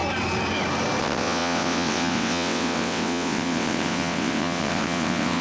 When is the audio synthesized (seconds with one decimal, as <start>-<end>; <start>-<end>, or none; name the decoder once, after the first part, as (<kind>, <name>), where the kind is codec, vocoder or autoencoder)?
1.0-5.4 (vocoder, WaveNeXt)